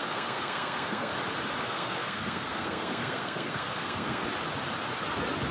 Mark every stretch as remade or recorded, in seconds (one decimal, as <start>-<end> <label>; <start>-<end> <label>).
0.0-1.1 remade; 1.1-1.6 recorded; 1.6-4.2 remade; 4.2-5.5 recorded